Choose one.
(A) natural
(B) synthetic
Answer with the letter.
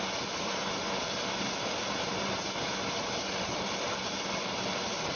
A